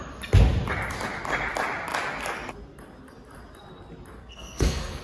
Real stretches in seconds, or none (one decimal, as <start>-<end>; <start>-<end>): 0.0-4.2